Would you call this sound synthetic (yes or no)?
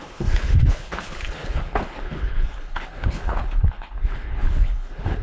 yes